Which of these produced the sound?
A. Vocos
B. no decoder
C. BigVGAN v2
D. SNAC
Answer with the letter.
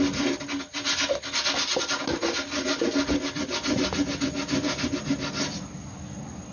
B